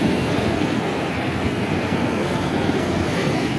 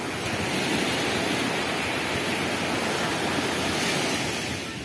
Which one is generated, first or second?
first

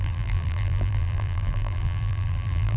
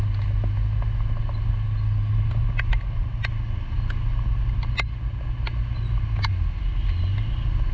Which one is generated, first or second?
first